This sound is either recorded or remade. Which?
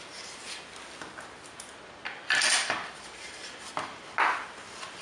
recorded